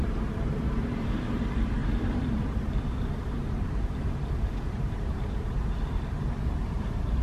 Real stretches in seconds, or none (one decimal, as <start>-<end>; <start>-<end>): none